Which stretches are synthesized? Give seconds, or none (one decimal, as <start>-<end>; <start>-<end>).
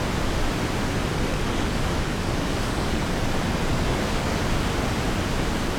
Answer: 1.3-3.0; 3.7-4.4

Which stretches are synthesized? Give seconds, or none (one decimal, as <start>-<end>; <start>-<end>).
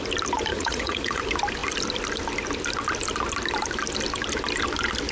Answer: 0.5-1.2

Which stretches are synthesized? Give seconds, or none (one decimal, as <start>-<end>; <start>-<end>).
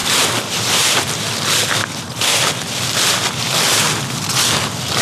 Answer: none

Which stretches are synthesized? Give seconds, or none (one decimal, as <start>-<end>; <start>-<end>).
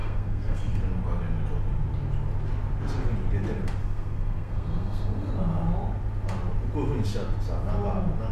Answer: 0.0-0.8; 3.8-5.3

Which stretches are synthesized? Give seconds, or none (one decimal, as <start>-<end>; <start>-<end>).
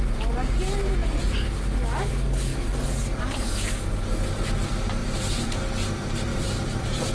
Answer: 1.0-1.6; 5.0-5.6; 6.3-7.1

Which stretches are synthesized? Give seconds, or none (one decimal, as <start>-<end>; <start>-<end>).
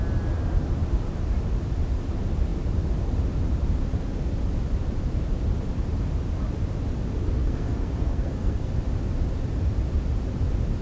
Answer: 7.4-8.7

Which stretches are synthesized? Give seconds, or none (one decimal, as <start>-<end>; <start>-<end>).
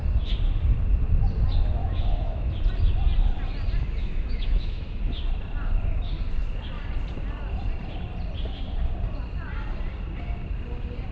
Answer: 1.8-2.5; 4.0-5.0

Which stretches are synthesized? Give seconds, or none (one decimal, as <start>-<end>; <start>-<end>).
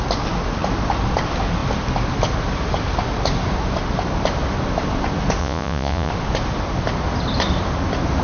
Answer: 5.4-6.1